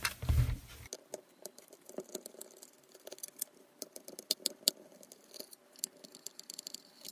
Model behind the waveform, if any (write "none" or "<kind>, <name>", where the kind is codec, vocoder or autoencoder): none